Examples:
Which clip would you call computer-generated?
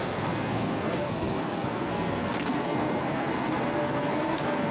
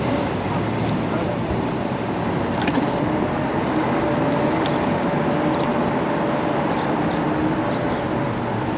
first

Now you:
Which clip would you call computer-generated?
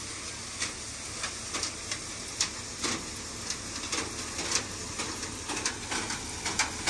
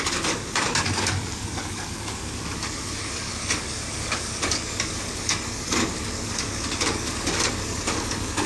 second